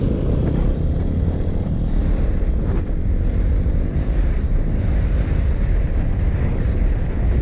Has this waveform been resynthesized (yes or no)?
yes